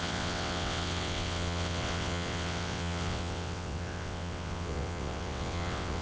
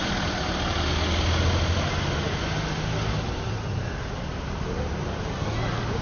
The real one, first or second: second